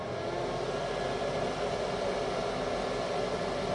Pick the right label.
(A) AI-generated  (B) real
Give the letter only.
B